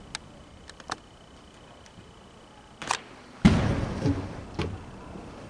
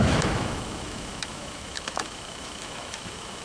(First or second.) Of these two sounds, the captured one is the first